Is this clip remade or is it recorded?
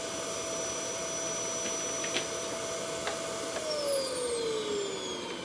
recorded